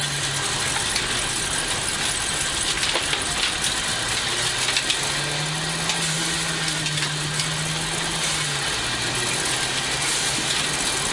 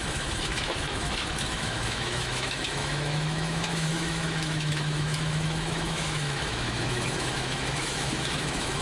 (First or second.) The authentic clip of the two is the first